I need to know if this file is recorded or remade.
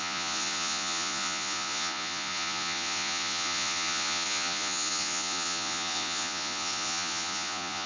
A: remade